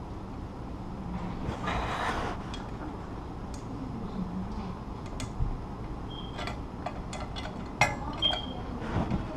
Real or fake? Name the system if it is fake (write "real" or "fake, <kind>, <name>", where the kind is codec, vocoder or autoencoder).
real